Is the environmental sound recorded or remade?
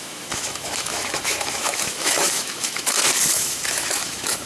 remade